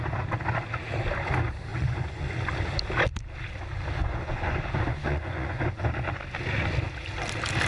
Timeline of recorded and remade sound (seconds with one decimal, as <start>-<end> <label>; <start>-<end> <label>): 0.0-1.7 recorded; 1.7-2.3 remade; 2.3-4.0 recorded; 4.0-6.2 remade; 6.2-7.7 recorded

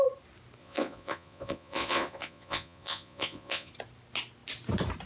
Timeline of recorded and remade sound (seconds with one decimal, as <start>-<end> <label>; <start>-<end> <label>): 0.0-0.6 recorded; 0.6-3.7 remade; 3.7-5.1 recorded